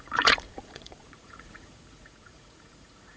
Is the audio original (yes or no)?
no